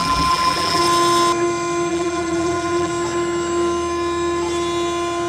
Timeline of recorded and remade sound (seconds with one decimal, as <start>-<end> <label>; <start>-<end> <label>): 0.0-0.8 remade; 0.8-1.9 recorded; 1.9-2.9 remade; 2.9-5.3 recorded